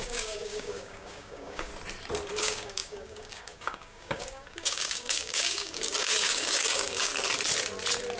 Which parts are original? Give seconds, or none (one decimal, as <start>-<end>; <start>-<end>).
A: 1.7-2.4; 7.1-8.2